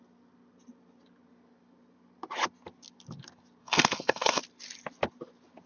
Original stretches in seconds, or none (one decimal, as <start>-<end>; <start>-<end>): 0.0-3.6; 4.4-5.7